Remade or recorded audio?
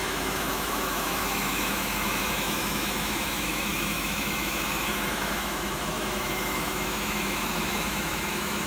remade